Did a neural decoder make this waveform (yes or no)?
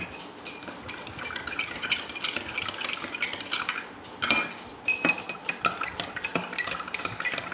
no